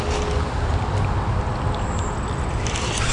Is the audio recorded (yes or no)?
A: yes